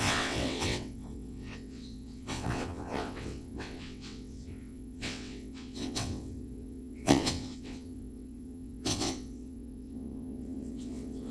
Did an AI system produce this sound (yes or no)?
yes